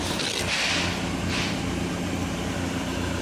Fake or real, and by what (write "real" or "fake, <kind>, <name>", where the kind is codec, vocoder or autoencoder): real